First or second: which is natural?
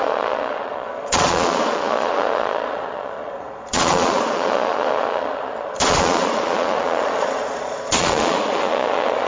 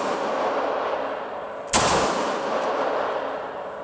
second